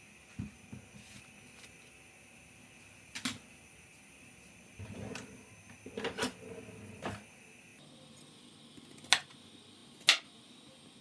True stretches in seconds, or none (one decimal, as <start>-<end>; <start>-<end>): 0.0-11.0